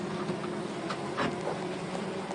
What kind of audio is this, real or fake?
real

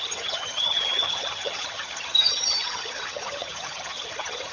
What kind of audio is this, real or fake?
fake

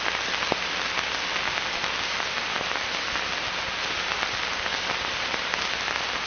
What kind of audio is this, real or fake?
real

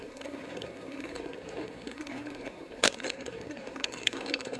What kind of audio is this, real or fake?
fake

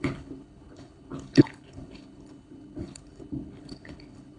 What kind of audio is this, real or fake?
fake